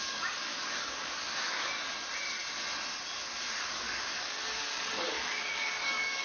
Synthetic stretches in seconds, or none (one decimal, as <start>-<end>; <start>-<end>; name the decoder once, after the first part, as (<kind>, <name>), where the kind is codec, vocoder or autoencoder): 0.0-1.7 (codec, DAC); 3.6-6.2